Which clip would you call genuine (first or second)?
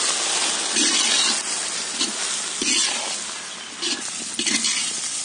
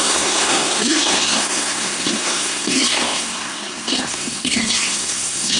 first